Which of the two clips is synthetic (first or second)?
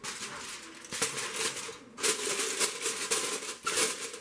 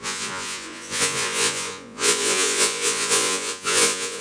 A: second